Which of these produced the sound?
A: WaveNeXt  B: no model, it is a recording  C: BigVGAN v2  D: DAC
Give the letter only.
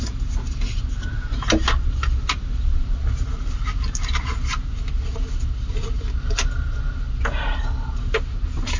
B